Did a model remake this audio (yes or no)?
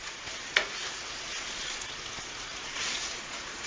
yes